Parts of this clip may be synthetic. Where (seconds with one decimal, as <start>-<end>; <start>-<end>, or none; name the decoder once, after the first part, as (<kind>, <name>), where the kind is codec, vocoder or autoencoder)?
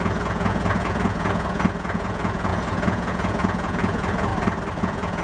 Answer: 0.0-4.3 (vocoder, Vocos); 4.8-5.2